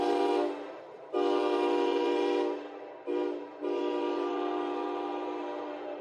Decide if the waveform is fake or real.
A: fake